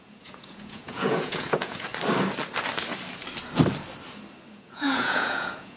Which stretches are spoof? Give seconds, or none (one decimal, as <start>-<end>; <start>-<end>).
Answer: 0.0-1.9; 4.5-5.8